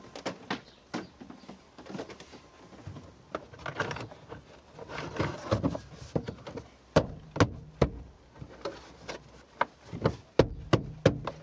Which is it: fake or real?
real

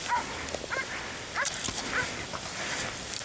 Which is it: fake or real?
real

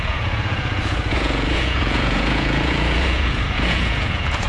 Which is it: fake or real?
fake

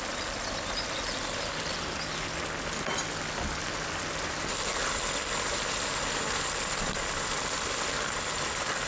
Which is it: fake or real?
real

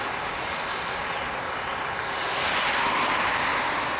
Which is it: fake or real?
real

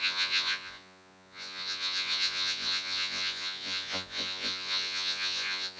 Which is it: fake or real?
fake